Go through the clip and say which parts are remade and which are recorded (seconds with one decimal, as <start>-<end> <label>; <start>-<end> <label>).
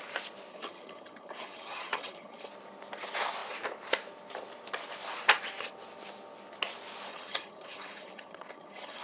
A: 0.0-0.5 recorded; 0.5-2.5 remade; 2.5-7.1 recorded; 7.1-9.0 remade